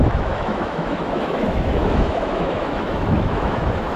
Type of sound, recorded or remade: remade